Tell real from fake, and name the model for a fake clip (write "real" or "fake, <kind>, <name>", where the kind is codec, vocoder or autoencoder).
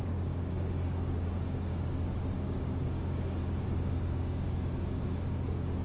fake, codec, DAC